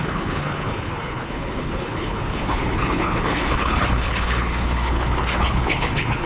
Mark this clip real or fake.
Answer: fake